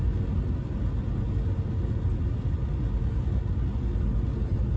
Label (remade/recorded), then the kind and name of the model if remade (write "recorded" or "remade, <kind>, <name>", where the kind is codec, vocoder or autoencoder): recorded